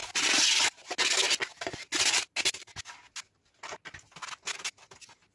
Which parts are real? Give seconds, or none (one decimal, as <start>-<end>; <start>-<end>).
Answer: 0.0-5.3